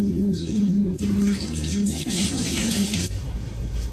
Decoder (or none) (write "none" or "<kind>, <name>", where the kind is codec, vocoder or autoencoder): codec, SNAC